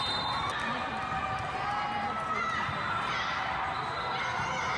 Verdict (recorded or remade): recorded